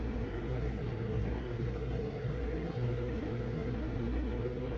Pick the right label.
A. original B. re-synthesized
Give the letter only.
B